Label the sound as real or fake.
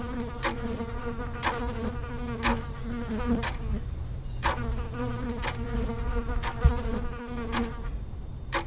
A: real